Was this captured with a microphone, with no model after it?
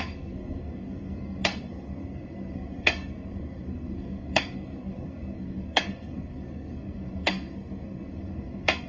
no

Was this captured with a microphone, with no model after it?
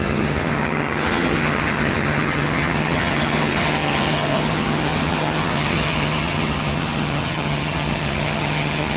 no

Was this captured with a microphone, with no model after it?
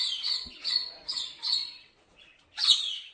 no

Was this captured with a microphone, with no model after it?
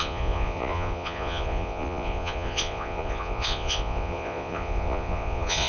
no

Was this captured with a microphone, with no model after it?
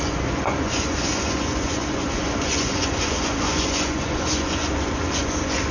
no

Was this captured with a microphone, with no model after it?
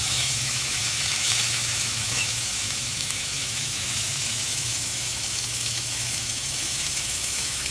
no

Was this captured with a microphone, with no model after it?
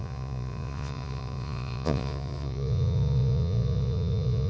no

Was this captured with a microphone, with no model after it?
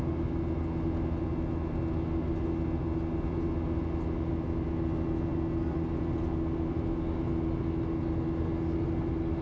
yes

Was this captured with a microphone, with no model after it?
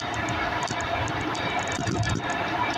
yes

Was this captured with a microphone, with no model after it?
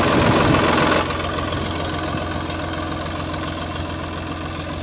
yes